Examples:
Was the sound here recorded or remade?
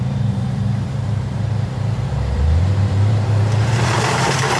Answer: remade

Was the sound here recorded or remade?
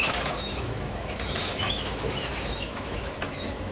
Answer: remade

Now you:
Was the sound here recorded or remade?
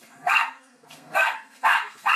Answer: remade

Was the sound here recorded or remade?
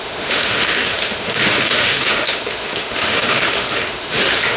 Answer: remade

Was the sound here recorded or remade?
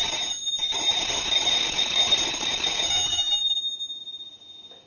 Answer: recorded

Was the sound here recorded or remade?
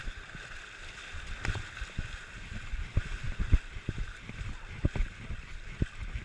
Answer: recorded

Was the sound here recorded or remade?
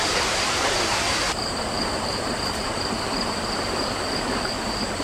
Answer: remade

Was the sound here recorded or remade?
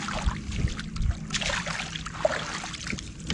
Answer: recorded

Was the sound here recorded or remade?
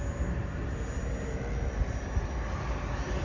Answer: recorded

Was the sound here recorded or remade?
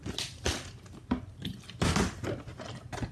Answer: recorded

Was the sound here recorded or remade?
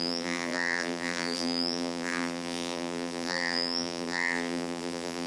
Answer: remade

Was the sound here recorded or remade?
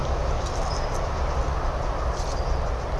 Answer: recorded